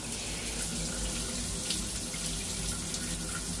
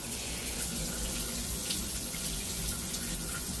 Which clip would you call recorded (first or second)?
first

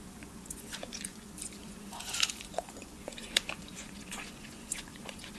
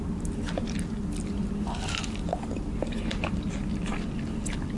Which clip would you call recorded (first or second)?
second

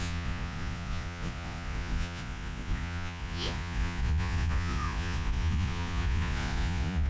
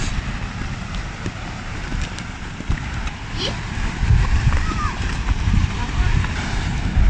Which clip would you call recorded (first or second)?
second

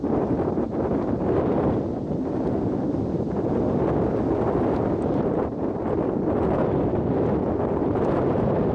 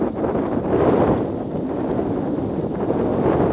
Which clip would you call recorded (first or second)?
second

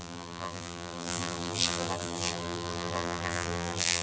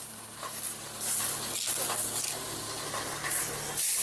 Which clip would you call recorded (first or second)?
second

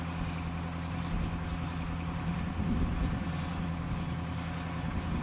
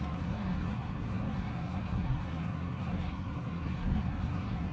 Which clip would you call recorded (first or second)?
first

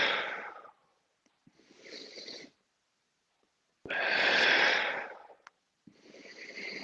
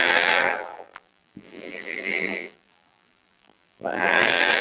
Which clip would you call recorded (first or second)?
first